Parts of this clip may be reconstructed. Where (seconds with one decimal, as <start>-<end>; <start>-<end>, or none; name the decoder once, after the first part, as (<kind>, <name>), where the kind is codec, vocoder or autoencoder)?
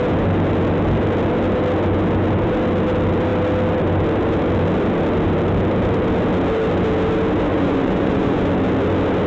7.5-8.4 (vocoder, Vocos)